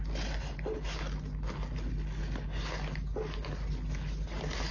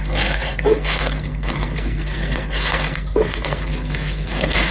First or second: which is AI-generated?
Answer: second